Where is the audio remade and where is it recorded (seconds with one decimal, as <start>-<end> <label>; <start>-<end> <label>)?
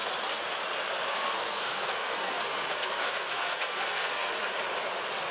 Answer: 0.0-1.1 recorded; 1.1-4.3 remade; 4.3-5.3 recorded